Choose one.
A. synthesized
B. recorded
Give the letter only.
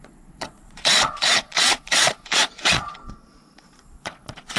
A